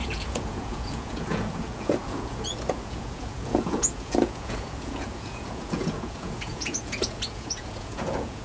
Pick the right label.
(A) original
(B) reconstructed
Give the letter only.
B